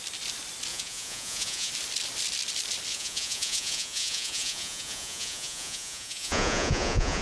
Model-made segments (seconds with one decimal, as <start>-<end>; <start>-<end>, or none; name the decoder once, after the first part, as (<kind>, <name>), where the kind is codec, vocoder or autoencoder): 0.7-1.7 (vocoder, Vocos); 2.9-7.2